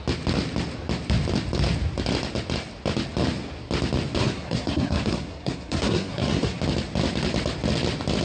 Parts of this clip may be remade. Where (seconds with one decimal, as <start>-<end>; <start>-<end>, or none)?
4.2-6.6